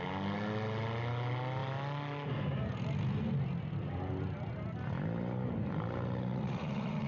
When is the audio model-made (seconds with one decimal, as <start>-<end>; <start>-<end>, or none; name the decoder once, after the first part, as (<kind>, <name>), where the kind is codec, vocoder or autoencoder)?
6.3-7.1 (vocoder, Vocos)